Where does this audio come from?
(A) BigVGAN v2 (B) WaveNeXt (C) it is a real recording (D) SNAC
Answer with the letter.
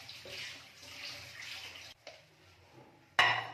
C